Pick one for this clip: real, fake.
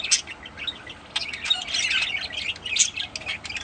real